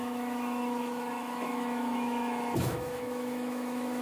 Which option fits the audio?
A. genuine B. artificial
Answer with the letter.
B